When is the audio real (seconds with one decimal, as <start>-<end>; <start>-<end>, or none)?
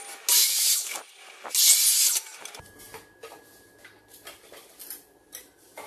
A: 0.0-0.4; 1.0-5.9